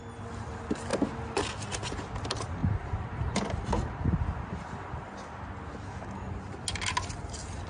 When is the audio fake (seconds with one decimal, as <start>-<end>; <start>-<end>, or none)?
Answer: 2.6-5.0